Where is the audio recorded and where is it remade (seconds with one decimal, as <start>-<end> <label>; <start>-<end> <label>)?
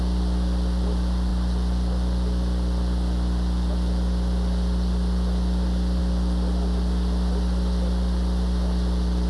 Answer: 0.0-9.3 recorded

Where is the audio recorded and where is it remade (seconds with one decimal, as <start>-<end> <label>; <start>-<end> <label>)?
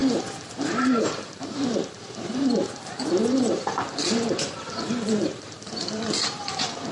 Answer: 0.0-6.9 remade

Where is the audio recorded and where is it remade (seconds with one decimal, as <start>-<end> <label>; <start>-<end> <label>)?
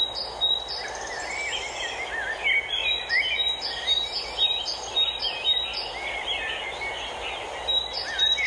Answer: 0.0-8.5 recorded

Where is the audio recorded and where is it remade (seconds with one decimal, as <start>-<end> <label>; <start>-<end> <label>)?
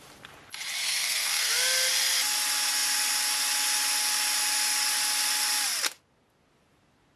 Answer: 0.0-0.8 recorded; 0.8-1.5 remade; 1.5-7.2 recorded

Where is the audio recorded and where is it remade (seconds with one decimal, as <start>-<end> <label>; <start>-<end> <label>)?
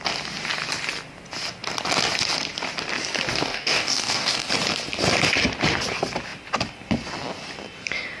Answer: 0.0-3.3 recorded; 3.3-4.5 remade; 4.5-8.2 recorded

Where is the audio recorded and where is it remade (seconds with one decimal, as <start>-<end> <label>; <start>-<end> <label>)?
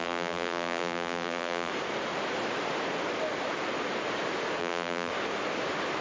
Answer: 0.0-1.7 remade; 1.7-4.6 recorded; 4.6-5.1 remade; 5.1-6.0 recorded